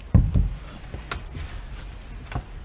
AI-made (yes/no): yes